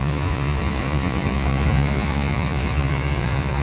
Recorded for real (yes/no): no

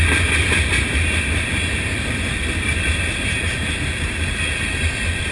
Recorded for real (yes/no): yes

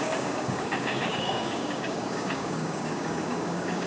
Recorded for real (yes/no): no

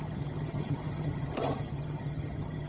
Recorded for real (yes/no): no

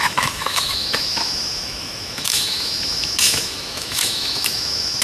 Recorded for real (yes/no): no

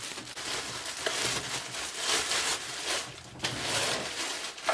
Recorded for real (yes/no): yes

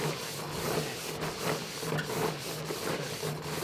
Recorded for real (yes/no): yes